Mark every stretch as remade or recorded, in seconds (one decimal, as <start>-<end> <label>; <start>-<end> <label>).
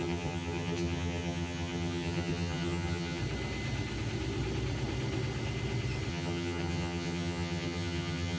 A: 0.0-3.2 remade; 3.2-6.1 recorded; 6.1-8.4 remade